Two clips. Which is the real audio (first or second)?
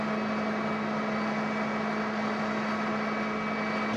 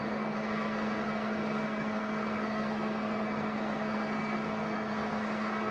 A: first